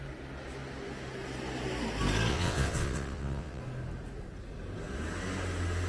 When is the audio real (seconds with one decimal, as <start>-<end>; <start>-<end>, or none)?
0.0-2.3; 3.6-5.9